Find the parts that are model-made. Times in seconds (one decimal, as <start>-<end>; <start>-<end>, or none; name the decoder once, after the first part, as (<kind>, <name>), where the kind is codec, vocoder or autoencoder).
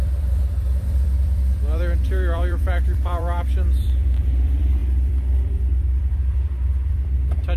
0.0-7.6 (vocoder, BigVGAN v2)